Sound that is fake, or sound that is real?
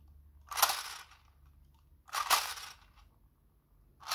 real